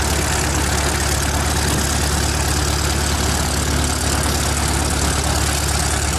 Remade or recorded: recorded